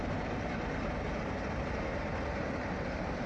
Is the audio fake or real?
real